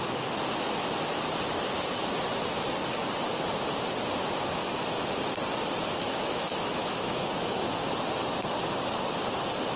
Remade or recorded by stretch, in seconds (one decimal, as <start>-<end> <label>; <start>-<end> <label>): 0.0-4.6 recorded; 4.6-5.1 remade; 5.1-6.2 recorded; 6.2-7.7 remade; 7.7-9.8 recorded